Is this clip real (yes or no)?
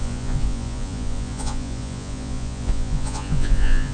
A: no